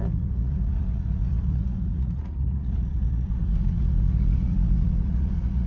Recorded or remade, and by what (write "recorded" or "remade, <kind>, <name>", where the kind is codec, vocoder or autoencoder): remade, vocoder, Vocos